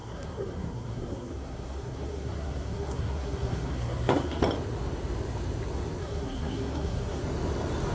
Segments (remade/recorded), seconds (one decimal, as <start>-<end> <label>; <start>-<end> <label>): 0.0-4.4 remade; 4.4-6.0 recorded; 6.0-7.2 remade; 7.2-7.9 recorded